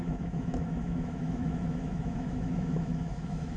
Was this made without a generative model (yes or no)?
no